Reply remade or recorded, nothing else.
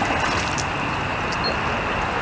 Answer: recorded